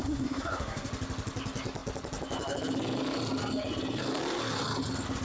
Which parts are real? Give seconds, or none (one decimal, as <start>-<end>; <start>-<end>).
0.9-5.2